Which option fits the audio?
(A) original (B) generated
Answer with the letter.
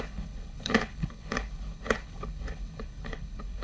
B